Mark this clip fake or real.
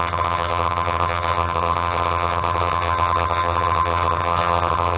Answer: fake